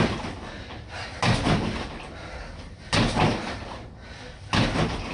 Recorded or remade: recorded